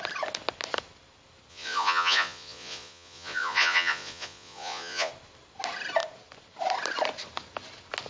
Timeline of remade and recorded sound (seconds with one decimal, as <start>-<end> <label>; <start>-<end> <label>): 0.0-1.5 recorded; 1.5-5.1 remade; 5.1-8.1 recorded